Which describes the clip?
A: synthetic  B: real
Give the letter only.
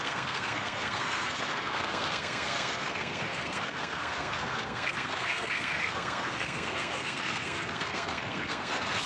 A